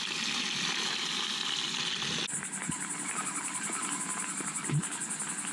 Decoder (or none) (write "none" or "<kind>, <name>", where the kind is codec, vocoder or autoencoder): none